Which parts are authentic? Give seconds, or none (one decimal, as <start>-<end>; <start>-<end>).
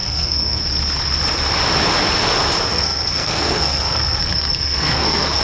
0.6-2.7